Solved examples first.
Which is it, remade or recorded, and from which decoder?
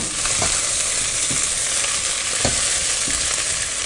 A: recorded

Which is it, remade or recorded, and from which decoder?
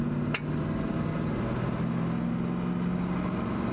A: recorded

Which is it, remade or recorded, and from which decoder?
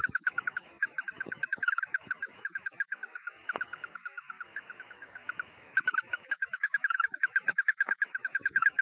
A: remade, autoencoder, DAC-VAE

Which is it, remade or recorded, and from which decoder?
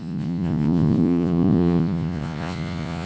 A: remade, vocoder, Vocos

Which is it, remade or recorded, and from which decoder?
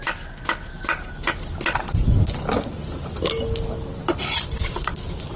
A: recorded